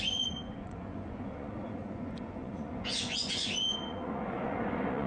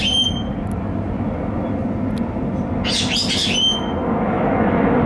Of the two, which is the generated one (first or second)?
first